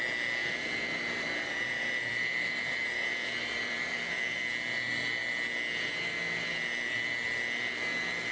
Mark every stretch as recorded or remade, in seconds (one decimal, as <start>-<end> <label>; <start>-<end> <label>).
0.0-0.4 recorded; 0.4-4.4 remade; 4.4-8.3 recorded